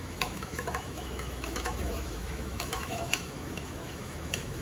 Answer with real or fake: fake